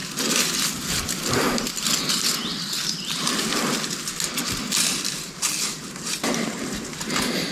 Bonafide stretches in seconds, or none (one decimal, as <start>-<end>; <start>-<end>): 3.3-7.5